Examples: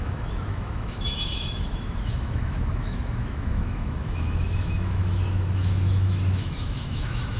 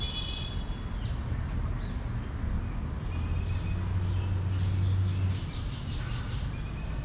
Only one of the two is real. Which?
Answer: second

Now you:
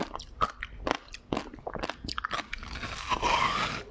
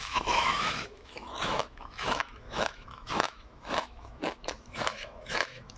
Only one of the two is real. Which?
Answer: first